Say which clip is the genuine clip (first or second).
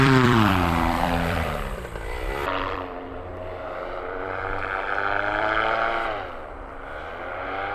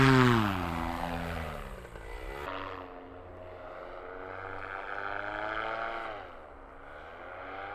second